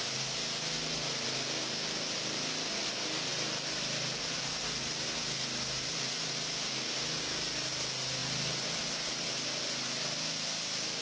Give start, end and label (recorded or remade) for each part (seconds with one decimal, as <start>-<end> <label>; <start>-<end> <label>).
0.0-11.0 recorded